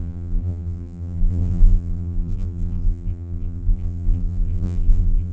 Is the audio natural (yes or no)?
no